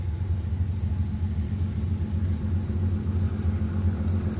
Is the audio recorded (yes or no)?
yes